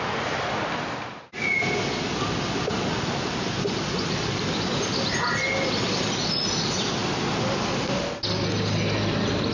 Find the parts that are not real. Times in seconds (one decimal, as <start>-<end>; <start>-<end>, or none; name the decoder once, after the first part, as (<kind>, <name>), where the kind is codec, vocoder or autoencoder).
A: none